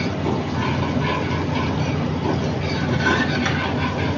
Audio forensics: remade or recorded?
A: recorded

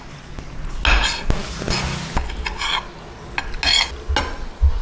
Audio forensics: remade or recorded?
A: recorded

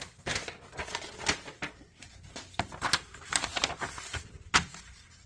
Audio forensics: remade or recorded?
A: recorded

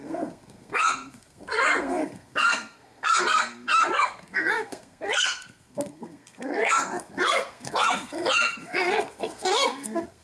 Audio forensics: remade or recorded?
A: remade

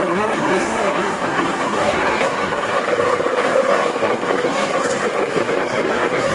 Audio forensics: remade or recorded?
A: remade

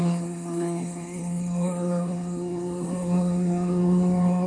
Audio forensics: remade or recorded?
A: remade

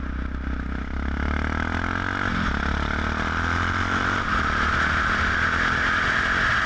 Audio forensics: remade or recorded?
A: recorded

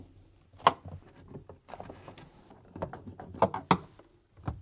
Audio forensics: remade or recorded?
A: recorded